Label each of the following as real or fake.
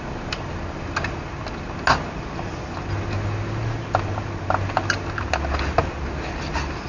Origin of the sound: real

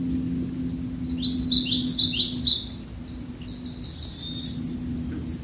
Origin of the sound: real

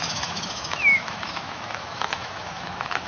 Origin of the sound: fake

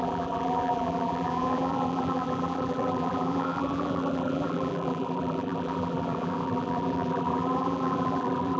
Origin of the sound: fake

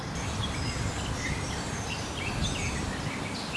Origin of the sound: real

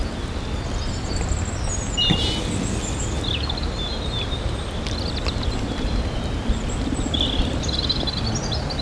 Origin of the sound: real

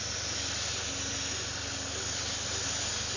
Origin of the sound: real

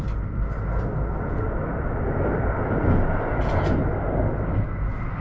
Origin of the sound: real